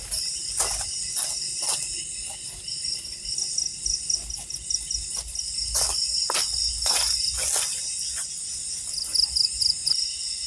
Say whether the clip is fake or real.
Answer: real